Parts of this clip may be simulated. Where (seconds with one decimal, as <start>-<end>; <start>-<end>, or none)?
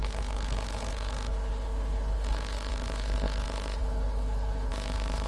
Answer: 0.0-5.3